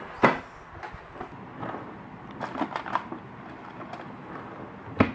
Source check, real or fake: real